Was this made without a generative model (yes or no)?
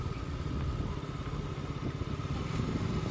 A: yes